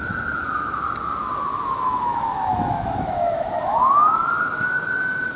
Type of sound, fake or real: fake